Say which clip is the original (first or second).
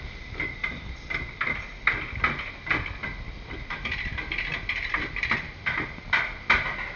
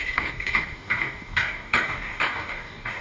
first